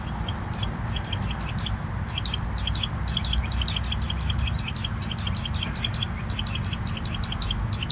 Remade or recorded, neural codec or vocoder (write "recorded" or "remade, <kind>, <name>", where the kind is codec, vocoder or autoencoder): recorded